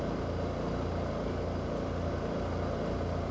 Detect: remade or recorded recorded